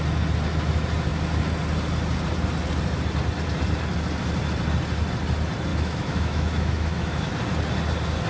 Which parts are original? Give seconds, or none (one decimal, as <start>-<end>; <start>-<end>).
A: 0.0-5.7; 7.3-8.3